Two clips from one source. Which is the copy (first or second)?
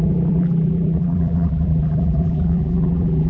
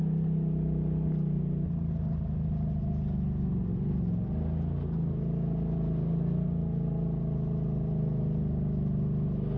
first